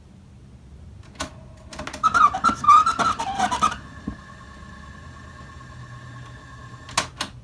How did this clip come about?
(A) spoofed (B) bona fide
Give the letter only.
B